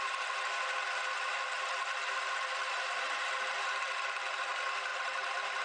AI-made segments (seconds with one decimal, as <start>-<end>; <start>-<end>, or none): none